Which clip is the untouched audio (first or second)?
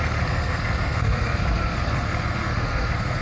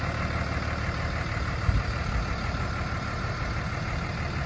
second